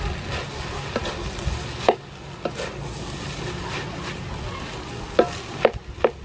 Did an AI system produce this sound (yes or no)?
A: no